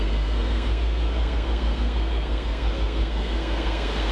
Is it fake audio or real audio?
fake